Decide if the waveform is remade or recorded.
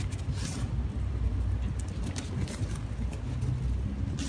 recorded